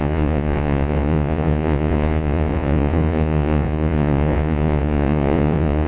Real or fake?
fake